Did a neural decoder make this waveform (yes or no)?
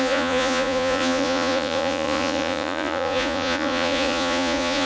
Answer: yes